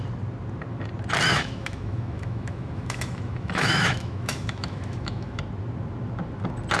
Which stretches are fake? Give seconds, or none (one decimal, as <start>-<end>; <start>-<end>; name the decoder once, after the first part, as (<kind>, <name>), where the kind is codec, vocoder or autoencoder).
1.3-5.4 (autoencoder, DAC-VAE)